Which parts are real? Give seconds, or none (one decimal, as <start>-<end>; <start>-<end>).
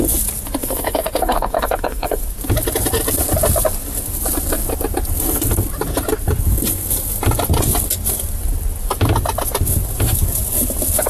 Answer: 0.0-0.6; 2.2-11.1